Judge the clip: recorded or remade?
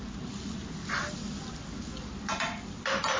recorded